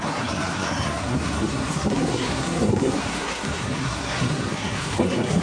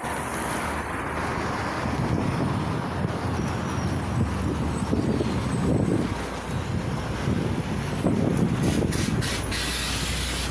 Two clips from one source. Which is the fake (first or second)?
first